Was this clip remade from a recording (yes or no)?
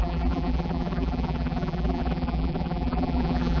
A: yes